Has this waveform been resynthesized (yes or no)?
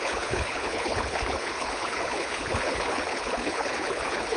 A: yes